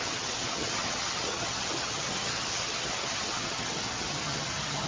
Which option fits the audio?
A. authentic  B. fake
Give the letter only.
B